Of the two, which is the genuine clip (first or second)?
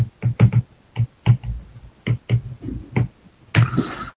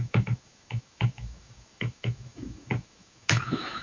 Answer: first